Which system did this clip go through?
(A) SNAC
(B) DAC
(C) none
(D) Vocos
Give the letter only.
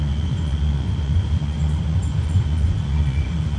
D